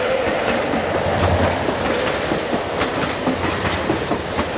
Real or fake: fake